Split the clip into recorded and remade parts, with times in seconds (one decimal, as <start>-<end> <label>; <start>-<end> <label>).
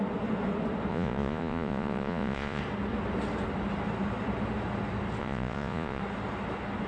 0.0-0.9 recorded; 0.9-2.6 remade; 2.6-5.2 recorded; 5.2-6.0 remade; 6.0-6.9 recorded